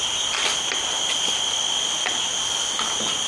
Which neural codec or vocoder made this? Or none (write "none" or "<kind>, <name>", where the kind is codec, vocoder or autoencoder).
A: none